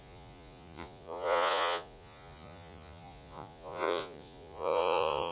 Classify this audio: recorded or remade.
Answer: remade